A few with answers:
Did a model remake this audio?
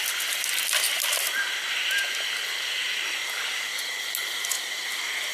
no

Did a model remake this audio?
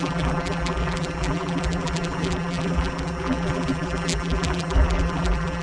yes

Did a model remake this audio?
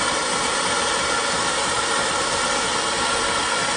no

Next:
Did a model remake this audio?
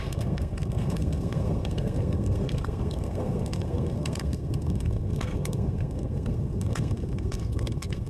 yes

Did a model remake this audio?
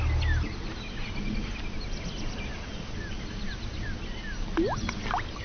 no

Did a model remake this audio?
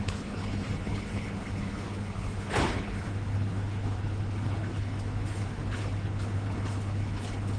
yes